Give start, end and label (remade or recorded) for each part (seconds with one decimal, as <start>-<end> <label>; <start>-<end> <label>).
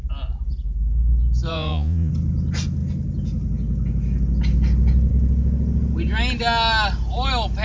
0.0-1.5 recorded; 1.5-2.1 remade; 2.1-7.6 recorded